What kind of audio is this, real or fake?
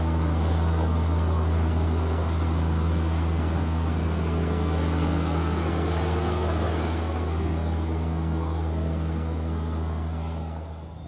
fake